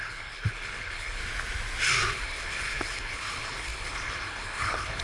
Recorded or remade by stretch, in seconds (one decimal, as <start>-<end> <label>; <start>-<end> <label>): 0.0-1.2 remade; 1.2-2.1 recorded; 2.1-5.0 remade